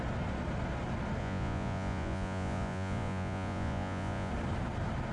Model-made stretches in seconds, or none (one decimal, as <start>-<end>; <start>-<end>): 1.2-4.3